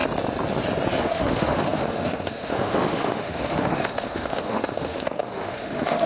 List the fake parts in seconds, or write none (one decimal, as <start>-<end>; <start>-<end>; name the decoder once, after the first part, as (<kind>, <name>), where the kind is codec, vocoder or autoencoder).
1.0-6.1 (autoencoder, DAC-VAE)